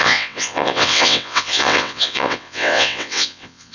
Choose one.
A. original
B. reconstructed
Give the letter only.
B